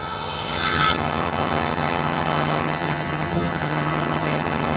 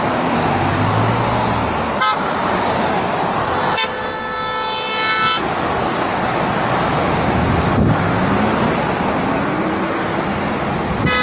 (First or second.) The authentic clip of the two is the second